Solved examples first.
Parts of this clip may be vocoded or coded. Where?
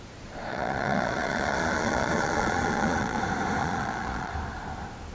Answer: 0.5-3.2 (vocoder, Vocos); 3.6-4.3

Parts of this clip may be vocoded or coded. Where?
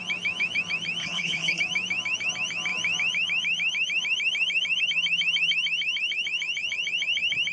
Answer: 1.0-1.6 (codec, HILCodec)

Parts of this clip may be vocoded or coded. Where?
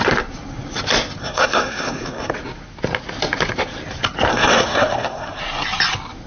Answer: 1.2-2.3 (codec, SNAC); 4.3-5.4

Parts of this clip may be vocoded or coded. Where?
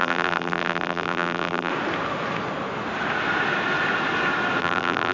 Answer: 0.0-1.7 (vocoder, BigVGAN v2); 4.6-5.1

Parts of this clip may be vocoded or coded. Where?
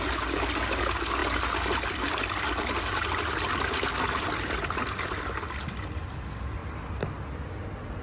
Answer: none